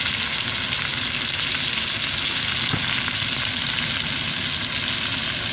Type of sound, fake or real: real